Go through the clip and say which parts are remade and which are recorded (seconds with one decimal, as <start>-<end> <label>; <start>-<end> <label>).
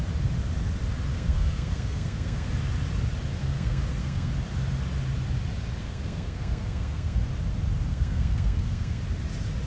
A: 0.0-1.1 recorded; 1.1-2.5 remade; 2.5-3.4 recorded; 3.4-4.3 remade; 4.3-5.8 recorded; 5.8-7.2 remade; 7.2-7.9 recorded; 7.9-9.0 remade; 9.0-9.7 recorded